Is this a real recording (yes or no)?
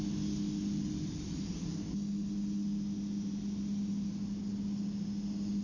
yes